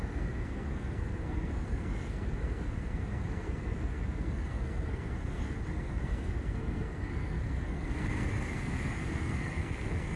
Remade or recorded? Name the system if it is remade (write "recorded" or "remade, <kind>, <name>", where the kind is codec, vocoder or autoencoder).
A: remade, codec, SNAC